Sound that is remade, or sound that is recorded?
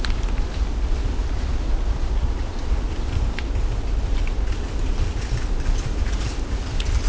recorded